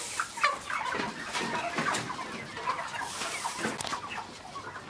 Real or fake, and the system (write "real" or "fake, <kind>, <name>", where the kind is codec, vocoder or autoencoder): real